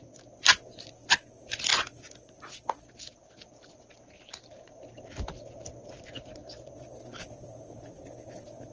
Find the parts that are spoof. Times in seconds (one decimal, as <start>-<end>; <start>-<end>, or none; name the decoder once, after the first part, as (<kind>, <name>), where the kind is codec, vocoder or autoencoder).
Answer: 6.4-7.0 (vocoder, Vocos)